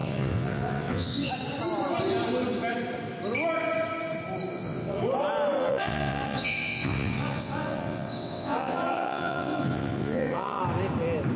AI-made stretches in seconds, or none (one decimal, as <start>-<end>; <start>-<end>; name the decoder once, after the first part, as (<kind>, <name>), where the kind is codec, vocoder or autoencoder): 0.0-1.3 (vocoder, WaveNeXt); 4.5-5.0; 5.6-10.6

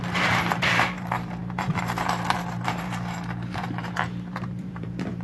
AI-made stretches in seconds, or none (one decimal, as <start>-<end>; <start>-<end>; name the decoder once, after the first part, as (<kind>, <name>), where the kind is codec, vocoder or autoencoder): 0.0-5.2 (vocoder, BigVGAN v2)